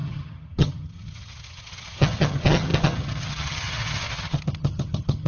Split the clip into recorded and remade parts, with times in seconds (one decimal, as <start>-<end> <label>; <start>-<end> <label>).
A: 0.0-5.3 remade